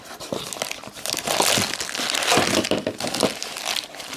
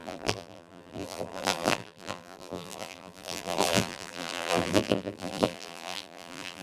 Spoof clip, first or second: second